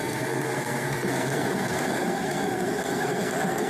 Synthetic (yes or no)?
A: yes